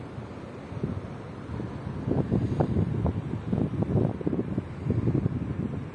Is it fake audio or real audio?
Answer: real